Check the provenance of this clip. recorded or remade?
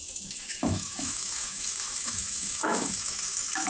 remade